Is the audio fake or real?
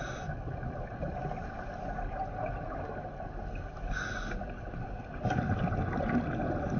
real